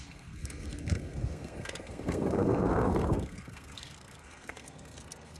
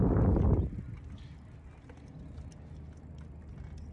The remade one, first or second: first